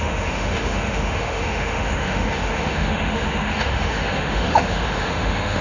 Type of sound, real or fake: fake